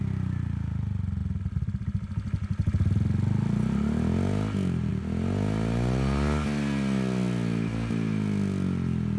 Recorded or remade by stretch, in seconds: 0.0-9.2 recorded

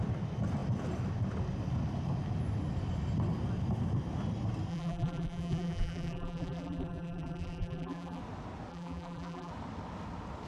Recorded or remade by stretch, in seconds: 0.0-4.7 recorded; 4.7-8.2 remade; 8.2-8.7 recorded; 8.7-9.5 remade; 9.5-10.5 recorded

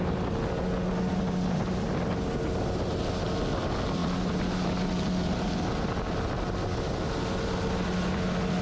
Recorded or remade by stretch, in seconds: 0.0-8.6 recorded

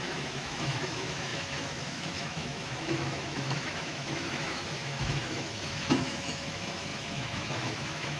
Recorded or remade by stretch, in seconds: 0.0-8.2 remade